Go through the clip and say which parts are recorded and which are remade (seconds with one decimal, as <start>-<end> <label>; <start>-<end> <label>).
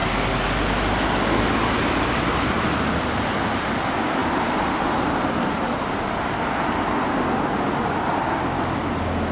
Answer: 0.0-9.3 recorded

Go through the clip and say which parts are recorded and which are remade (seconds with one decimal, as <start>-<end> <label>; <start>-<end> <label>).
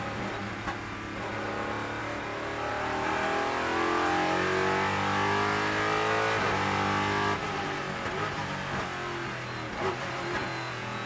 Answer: 0.0-10.4 recorded; 10.4-11.1 remade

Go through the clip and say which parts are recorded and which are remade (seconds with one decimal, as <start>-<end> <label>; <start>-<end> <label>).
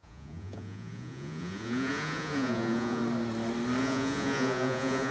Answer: 0.0-3.0 remade; 3.0-3.8 recorded; 3.8-5.1 remade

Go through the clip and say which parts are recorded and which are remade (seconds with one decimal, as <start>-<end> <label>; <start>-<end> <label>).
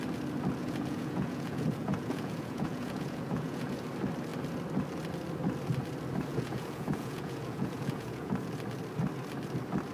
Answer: 0.0-0.6 recorded; 0.6-3.8 remade; 3.8-6.3 recorded; 6.3-8.3 remade; 8.3-9.9 recorded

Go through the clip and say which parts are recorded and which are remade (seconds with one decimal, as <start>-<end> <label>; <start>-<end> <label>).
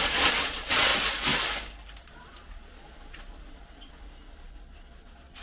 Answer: 0.0-0.9 remade; 0.9-2.0 recorded; 2.0-5.4 remade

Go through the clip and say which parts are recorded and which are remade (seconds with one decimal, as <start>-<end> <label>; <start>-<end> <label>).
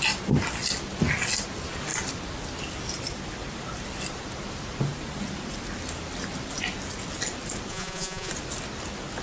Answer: 0.0-7.7 recorded; 7.7-8.3 remade; 8.3-9.2 recorded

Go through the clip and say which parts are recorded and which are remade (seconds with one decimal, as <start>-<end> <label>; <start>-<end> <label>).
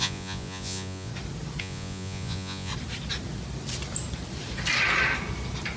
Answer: 0.0-1.1 remade; 1.1-1.6 recorded; 1.6-2.7 remade; 2.7-5.8 recorded